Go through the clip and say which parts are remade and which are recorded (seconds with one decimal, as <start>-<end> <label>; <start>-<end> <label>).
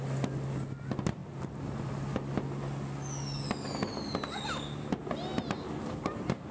0.0-6.5 recorded